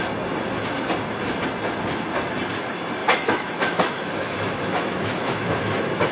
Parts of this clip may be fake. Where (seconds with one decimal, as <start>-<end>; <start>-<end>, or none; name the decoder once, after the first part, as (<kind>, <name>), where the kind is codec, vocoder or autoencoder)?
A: 3.0-6.1 (autoencoder, DAC-VAE)